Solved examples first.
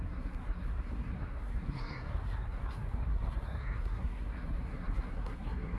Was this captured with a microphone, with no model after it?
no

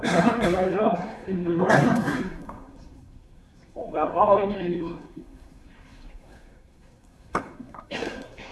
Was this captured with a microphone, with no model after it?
no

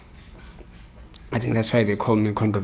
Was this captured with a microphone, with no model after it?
no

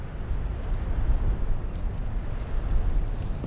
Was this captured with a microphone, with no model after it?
yes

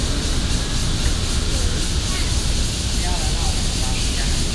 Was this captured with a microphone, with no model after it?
yes